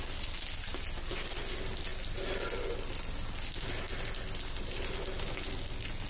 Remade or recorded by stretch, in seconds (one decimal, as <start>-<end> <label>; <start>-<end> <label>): 0.0-6.1 recorded